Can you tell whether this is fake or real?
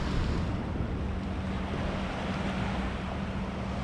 real